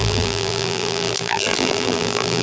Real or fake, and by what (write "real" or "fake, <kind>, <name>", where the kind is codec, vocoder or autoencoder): fake, vocoder, BigVGAN v2